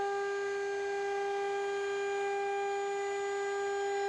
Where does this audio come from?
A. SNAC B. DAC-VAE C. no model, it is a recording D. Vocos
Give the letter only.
C